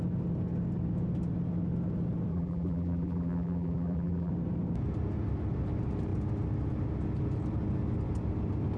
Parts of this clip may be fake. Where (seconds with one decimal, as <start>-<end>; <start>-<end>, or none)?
2.3-4.3